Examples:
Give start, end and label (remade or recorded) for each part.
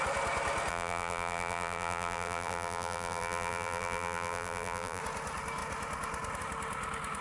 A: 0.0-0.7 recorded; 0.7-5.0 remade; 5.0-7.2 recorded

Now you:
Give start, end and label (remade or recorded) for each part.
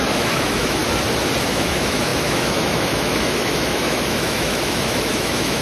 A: 0.0-0.8 remade; 0.8-1.4 recorded; 1.4-5.6 remade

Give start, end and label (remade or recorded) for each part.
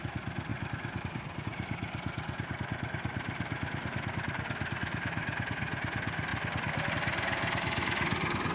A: 0.0-8.5 recorded